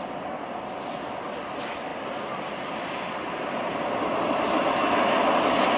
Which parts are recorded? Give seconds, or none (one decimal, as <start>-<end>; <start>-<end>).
0.0-5.8